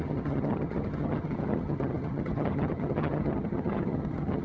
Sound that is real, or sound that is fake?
fake